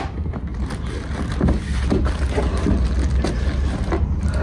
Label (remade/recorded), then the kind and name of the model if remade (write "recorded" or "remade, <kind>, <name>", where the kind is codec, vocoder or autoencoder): recorded